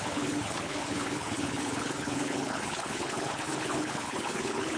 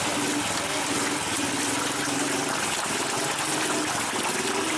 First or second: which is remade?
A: first